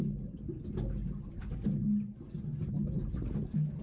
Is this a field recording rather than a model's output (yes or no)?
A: yes